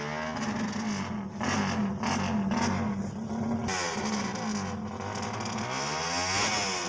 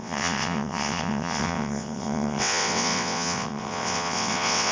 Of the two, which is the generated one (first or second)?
second